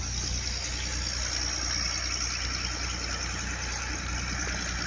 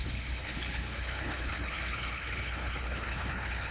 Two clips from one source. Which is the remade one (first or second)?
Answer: second